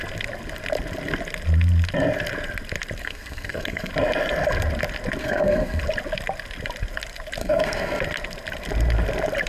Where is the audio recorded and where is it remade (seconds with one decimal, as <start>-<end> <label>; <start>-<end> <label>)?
0.0-3.0 recorded; 3.0-3.9 remade; 3.9-5.2 recorded; 5.2-5.8 remade; 5.8-7.4 recorded; 7.4-8.0 remade; 8.0-9.5 recorded